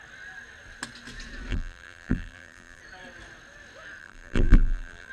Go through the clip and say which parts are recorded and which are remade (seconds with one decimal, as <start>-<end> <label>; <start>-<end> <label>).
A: 0.0-1.5 recorded; 1.5-2.8 remade; 2.8-4.0 recorded; 4.0-5.1 remade